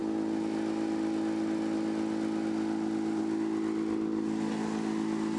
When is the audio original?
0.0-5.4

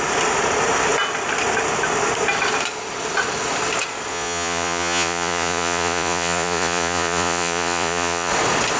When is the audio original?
0.0-4.1; 8.3-8.8